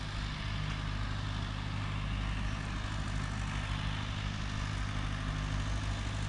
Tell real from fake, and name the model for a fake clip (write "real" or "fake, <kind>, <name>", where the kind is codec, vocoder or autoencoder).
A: real